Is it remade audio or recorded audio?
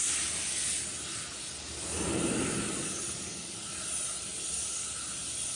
recorded